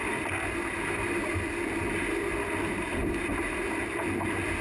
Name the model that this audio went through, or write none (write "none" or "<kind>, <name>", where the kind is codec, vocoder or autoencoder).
none